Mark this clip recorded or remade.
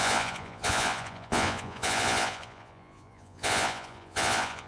remade